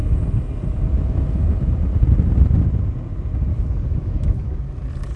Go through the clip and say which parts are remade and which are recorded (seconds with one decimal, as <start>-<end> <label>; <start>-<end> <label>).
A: 0.0-3.5 recorded; 3.5-4.6 remade; 4.6-5.2 recorded